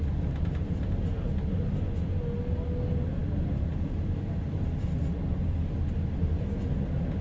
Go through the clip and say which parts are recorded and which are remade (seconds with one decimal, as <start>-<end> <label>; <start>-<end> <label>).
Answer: 0.0-7.2 recorded